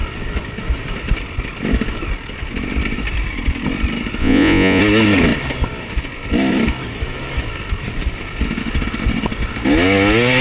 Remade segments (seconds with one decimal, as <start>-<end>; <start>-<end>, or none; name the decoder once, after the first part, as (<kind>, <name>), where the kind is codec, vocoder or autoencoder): 4.2-4.8 (vocoder, Vocos)